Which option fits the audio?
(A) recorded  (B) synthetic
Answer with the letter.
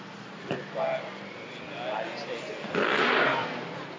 A